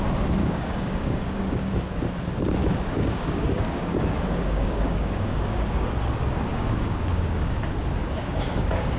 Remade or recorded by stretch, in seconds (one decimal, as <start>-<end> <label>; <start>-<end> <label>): 0.0-0.4 recorded; 0.4-1.7 remade; 1.7-2.6 recorded; 2.6-6.0 remade; 6.0-6.5 recorded; 6.5-7.6 remade; 7.6-8.0 recorded; 8.0-9.0 remade